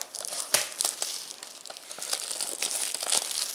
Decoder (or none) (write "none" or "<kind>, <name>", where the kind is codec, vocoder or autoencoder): vocoder, BigVGAN v2